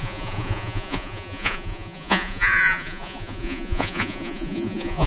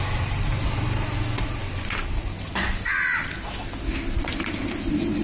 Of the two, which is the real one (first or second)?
second